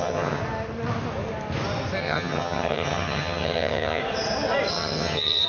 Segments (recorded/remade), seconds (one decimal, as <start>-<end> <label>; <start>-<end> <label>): 0.0-0.4 remade; 0.4-2.0 recorded; 2.0-4.0 remade; 4.0-4.7 recorded; 4.7-5.5 remade